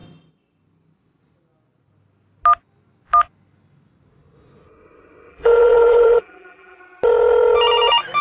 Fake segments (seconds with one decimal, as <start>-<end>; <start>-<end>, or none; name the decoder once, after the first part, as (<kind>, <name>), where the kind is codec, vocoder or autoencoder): 5.3-6.8 (vocoder, BigVGAN v2)